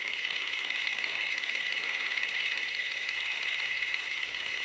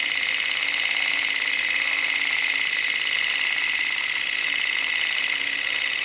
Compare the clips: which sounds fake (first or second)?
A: first